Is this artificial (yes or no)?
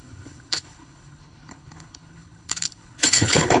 yes